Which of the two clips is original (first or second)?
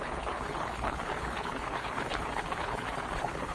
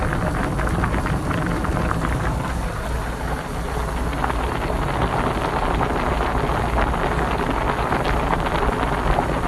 second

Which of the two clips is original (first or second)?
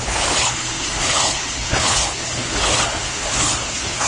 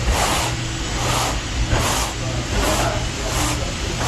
second